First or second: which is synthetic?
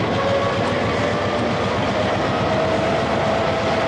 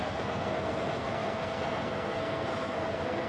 second